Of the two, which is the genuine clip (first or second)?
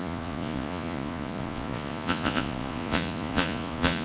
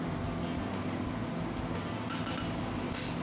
second